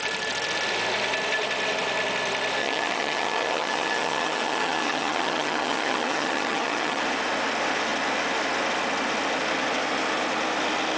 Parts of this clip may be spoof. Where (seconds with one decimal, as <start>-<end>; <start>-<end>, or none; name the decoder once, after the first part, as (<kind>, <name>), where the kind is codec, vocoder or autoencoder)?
2.6-7.0 (vocoder, HiFi-GAN)

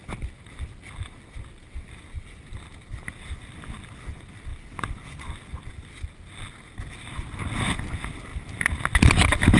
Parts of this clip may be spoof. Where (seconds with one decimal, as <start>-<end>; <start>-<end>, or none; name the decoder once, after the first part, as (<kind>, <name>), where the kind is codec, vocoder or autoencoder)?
none

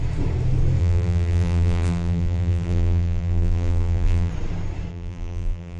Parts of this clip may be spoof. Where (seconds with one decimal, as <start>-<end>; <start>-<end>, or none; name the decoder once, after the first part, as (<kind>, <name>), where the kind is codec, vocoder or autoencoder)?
0.8-4.3 (vocoder, BigVGAN v2); 4.9-5.8

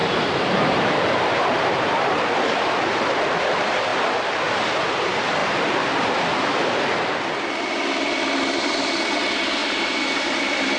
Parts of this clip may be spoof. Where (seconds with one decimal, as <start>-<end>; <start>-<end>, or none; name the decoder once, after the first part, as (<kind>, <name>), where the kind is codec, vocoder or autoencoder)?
0.0-3.0 (vocoder, BigVGAN v2); 9.6-10.8

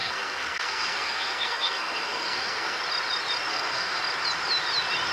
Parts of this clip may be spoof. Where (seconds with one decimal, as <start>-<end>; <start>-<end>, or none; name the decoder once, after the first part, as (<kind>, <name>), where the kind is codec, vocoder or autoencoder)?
0.0-2.8 (codec, SNAC); 3.5-4.0

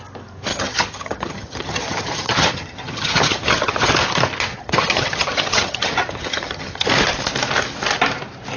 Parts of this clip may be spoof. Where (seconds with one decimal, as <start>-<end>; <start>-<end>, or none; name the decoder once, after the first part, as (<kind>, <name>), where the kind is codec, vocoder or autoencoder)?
0.5-3.9 (vocoder, HiFi-GAN); 4.5-6.9

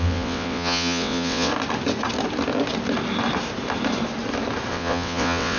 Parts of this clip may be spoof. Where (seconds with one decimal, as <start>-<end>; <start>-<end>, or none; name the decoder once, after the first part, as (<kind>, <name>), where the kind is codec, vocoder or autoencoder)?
0.0-1.5 (vocoder, WaveNeXt); 4.7-5.6